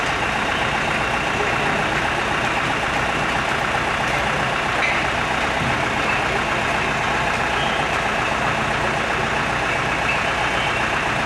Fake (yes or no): no